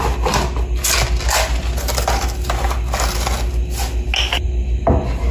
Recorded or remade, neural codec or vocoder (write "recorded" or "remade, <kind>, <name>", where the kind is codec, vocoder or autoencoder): recorded